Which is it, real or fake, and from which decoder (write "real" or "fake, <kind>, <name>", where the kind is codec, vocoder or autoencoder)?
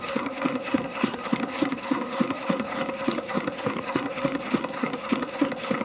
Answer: fake, codec, SNAC